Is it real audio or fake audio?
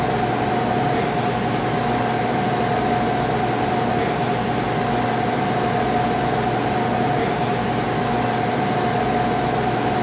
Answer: real